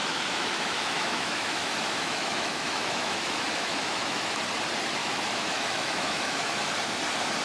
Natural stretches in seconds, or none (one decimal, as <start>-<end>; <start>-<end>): 4.4-5.0; 6.7-7.4